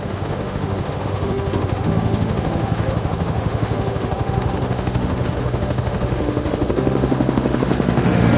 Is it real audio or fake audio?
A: fake